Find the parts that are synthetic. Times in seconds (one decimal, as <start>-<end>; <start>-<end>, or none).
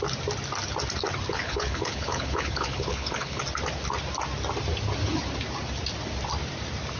1.3-3.4